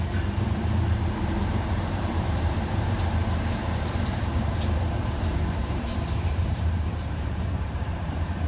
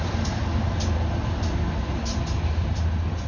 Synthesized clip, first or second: first